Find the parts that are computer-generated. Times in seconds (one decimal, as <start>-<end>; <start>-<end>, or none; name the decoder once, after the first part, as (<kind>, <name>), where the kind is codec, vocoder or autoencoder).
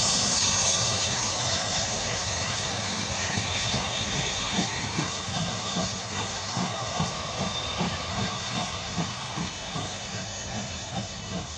0.0-7.1 (codec, SNAC); 8.1-11.6